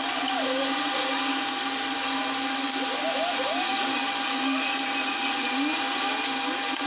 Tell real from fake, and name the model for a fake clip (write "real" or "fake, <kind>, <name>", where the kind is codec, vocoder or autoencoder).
real